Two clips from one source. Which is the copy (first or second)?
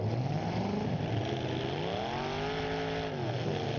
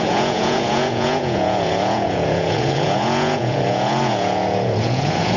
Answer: second